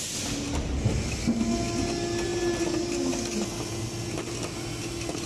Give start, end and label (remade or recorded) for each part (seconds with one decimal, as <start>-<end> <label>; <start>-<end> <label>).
0.0-5.3 recorded